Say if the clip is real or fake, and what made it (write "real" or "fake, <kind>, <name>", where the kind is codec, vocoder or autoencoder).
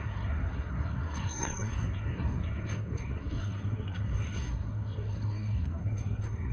fake, codec, SNAC